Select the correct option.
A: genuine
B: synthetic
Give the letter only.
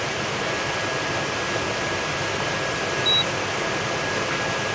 A